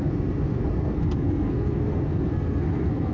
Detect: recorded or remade remade